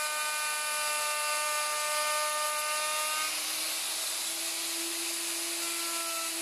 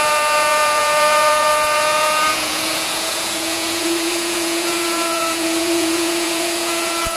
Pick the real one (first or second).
first